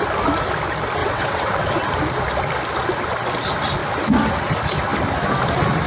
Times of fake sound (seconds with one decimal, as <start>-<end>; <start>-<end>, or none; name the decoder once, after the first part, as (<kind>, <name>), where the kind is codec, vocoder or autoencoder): 1.0-1.8 (vocoder, WaveNeXt)